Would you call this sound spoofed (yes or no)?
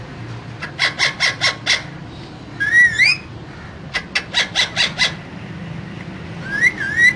no